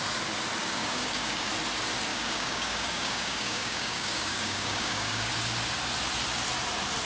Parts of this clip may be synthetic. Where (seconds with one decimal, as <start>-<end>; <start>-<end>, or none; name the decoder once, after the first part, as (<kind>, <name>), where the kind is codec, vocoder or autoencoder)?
0.6-1.5 (codec, DAC); 2.1-5.3